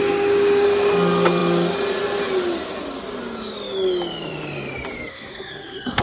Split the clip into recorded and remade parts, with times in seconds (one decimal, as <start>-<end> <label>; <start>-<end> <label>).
0.0-5.1 recorded; 5.1-6.0 remade